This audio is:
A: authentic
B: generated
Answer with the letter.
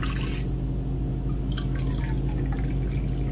A